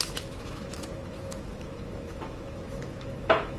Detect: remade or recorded remade